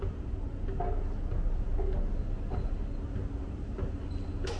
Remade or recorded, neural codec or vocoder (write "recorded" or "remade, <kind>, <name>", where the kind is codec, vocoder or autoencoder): recorded